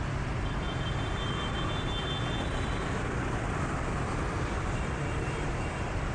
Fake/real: real